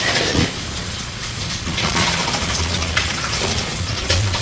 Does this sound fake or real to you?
fake